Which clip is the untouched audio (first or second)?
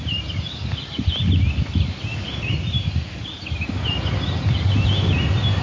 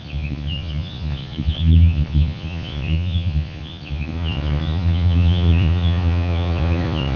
first